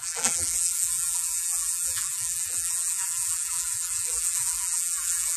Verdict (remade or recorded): remade